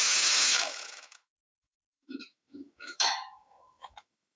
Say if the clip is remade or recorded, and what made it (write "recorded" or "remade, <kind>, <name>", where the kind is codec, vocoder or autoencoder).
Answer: remade, autoencoder, DAC-VAE